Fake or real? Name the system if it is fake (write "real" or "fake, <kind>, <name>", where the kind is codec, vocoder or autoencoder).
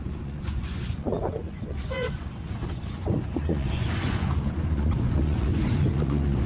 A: fake, vocoder, Vocos